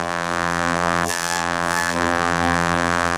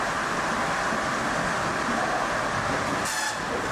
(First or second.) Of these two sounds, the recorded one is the second